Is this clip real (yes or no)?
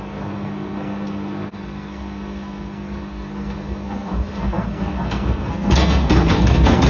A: no